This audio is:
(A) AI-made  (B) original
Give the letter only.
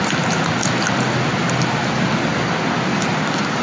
B